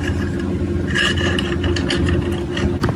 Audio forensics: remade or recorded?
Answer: recorded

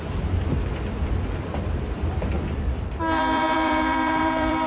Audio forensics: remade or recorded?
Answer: remade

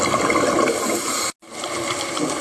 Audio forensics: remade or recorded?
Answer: recorded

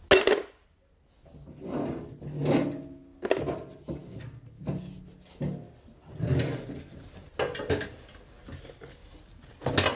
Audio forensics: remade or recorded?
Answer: recorded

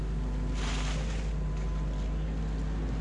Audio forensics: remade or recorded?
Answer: recorded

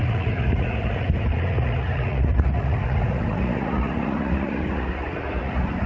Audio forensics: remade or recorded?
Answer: remade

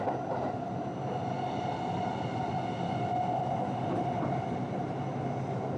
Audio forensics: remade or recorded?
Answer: recorded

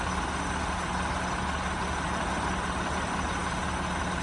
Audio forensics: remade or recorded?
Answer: recorded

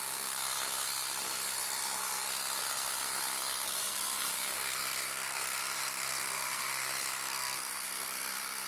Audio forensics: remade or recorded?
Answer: remade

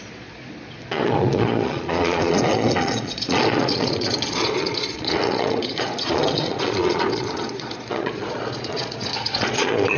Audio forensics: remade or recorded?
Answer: remade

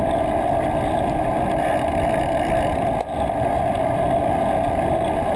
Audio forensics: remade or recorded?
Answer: recorded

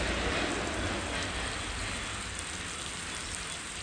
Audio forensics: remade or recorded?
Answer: recorded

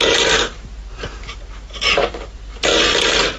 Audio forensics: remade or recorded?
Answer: remade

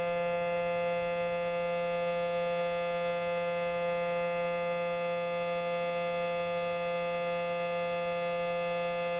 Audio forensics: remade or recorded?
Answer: recorded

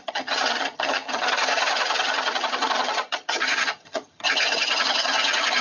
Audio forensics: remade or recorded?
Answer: remade